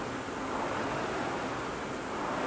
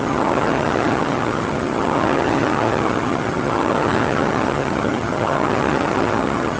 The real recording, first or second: first